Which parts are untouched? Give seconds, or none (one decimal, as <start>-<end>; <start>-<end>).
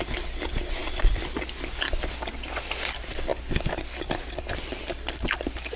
0.0-5.8